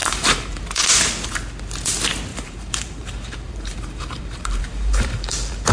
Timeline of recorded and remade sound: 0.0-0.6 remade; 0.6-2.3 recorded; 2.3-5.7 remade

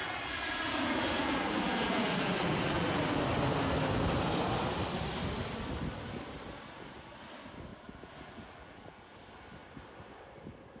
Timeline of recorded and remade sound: 0.0-3.2 remade; 3.2-7.7 recorded; 7.7-9.0 remade; 9.0-10.8 recorded

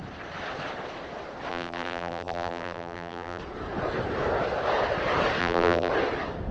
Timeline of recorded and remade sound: 0.0-1.5 recorded; 1.5-3.4 remade; 3.4-5.4 recorded; 5.4-5.9 remade; 5.9-6.5 recorded